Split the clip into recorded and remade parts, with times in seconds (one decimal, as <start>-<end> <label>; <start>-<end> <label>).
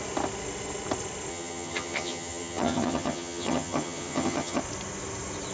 0.0-1.3 recorded; 1.3-4.6 remade; 4.6-5.5 recorded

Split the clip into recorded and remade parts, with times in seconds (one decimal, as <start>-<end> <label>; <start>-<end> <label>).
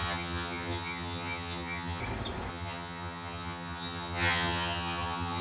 0.0-2.0 remade; 2.0-2.5 recorded; 2.5-5.4 remade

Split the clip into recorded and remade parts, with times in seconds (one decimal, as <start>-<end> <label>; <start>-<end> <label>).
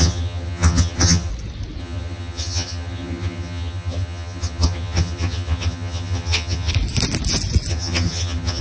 0.0-1.3 remade; 1.3-1.8 recorded; 1.8-6.7 remade; 6.7-7.7 recorded; 7.7-8.6 remade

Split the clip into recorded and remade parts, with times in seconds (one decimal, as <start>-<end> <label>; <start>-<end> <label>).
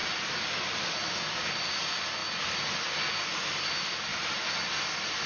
0.0-5.3 recorded